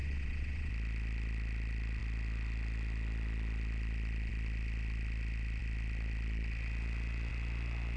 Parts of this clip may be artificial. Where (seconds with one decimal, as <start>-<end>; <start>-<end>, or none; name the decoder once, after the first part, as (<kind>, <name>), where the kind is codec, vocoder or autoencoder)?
0.0-0.7 (vocoder, WaveNeXt)